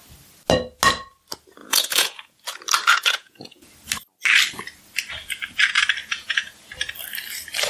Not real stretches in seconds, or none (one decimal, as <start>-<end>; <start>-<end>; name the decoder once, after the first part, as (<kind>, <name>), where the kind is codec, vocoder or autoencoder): 1.6-2.4 (vocoder, Vocos); 2.9-3.7; 6.0-6.7